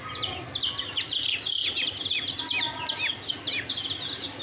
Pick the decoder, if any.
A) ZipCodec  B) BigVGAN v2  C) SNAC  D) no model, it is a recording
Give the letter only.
D